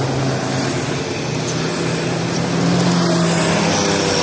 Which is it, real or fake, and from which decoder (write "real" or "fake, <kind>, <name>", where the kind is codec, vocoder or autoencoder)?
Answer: real